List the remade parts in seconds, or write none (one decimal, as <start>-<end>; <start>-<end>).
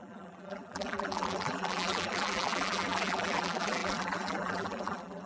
0.0-5.3